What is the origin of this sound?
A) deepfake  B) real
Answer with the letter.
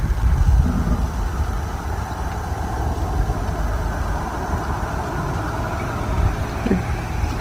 B